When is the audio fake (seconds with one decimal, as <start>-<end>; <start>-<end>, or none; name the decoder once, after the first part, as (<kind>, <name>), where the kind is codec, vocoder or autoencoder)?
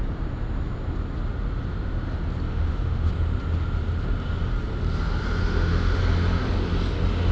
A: 2.5-3.1 (autoencoder, DAC-VAE); 5.4-6.0